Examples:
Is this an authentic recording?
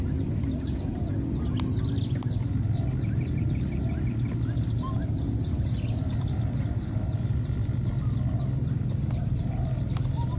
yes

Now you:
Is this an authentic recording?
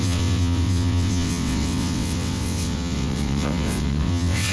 no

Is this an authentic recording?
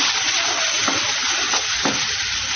yes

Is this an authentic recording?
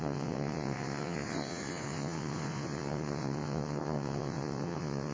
no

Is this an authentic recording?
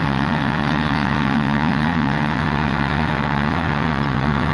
no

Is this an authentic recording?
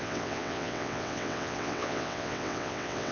no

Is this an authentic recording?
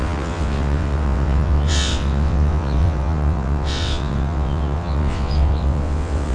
no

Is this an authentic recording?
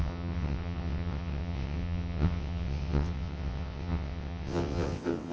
no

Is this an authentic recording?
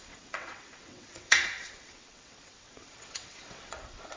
no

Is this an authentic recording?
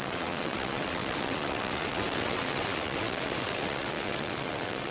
no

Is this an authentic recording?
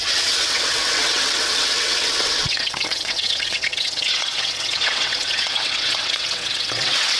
no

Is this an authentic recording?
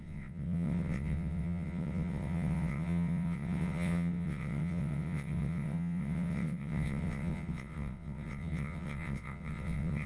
no